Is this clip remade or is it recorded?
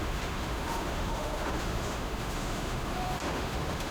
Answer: remade